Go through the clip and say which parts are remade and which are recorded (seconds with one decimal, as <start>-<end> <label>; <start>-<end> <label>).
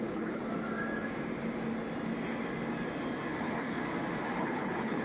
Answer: 0.0-0.4 remade; 0.4-3.4 recorded; 3.4-3.8 remade; 3.8-4.3 recorded; 4.3-5.0 remade